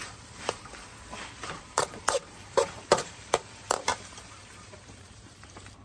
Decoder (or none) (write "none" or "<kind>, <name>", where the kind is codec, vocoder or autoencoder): vocoder, BigVGAN v2